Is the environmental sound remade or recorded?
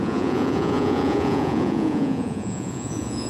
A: remade